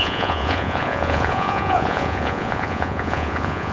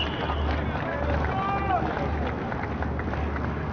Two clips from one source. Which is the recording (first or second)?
second